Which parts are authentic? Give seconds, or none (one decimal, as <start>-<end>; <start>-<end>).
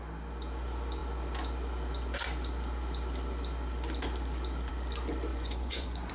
0.0-5.3